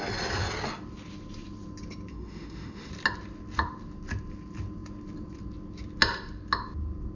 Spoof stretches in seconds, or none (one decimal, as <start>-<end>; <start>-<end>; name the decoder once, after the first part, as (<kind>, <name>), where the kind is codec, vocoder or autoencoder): 2.1-2.9 (autoencoder, DAC-VAE)